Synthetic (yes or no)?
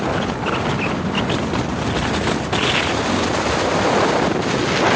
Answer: no